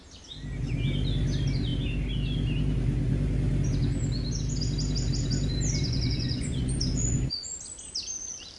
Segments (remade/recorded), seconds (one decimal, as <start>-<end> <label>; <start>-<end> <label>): 0.0-5.8 recorded; 5.8-7.6 remade; 7.6-8.6 recorded